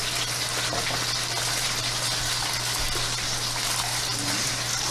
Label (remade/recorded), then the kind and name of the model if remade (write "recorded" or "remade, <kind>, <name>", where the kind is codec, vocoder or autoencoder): recorded